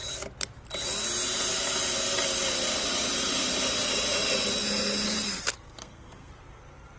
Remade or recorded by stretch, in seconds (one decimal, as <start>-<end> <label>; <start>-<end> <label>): 0.0-5.8 recorded; 5.8-6.3 remade; 6.3-7.0 recorded